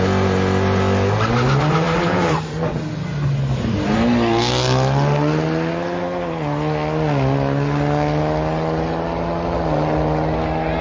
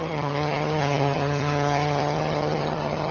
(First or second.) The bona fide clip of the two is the first